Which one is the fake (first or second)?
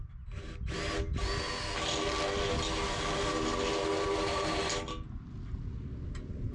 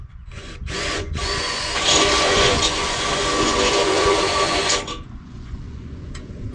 second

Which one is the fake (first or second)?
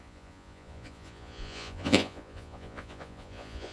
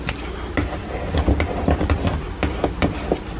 first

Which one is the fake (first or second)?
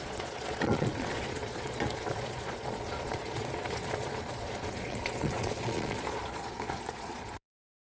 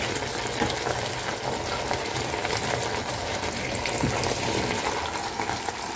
first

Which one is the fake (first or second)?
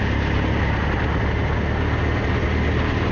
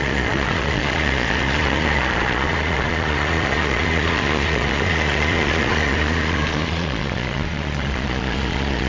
second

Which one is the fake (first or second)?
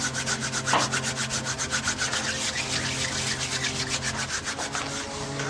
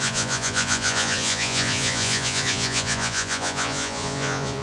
second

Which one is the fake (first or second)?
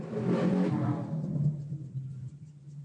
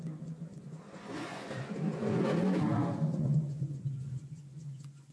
second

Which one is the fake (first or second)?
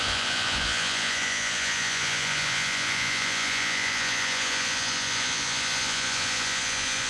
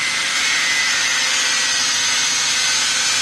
first